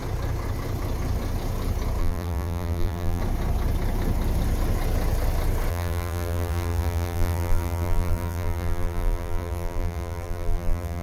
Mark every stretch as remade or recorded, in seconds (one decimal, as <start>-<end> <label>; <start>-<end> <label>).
0.0-2.0 recorded; 2.0-3.2 remade; 3.2-5.7 recorded; 5.7-11.0 remade